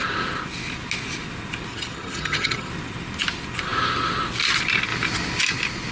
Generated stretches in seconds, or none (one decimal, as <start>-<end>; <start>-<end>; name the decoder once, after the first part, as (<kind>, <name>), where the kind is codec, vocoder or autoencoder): 1.7-2.7 (vocoder, HiFi-GAN)